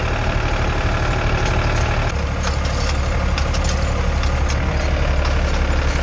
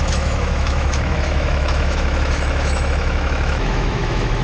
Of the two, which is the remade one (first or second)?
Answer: second